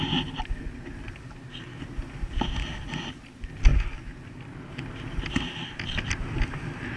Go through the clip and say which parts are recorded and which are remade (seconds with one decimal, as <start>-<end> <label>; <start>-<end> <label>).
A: 0.0-7.0 recorded